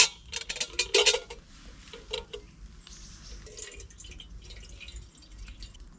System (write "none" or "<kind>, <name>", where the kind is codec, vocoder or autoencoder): none